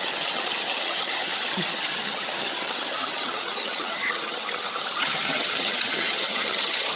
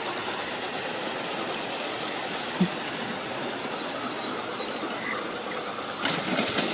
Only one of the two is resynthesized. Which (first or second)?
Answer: first